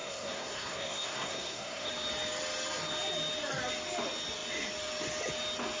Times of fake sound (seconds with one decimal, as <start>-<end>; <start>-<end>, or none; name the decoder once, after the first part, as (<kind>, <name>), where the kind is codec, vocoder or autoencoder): 0.0-1.9 (codec, SNAC)